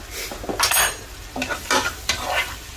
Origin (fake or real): real